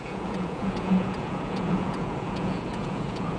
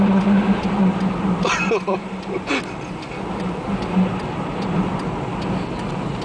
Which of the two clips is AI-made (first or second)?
first